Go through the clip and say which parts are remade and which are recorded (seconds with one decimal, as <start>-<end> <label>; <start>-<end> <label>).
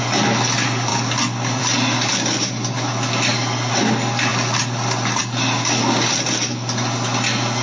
0.0-7.6 recorded